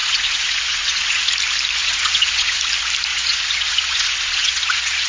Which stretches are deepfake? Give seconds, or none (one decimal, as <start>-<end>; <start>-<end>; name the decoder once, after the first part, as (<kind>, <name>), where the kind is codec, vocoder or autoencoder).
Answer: 0.0-1.3 (vocoder, Vocos); 1.8-2.6; 3.1-5.1